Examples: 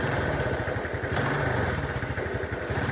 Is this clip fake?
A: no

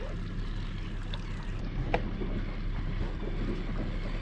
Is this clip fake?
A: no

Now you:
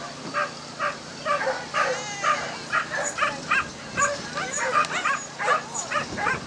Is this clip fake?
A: no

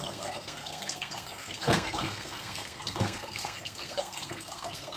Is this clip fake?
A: yes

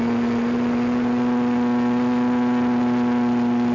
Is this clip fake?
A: no